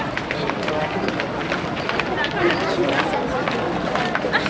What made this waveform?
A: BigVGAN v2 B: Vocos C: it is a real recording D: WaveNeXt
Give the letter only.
C